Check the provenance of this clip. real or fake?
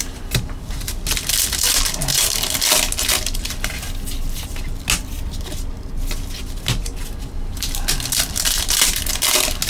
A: real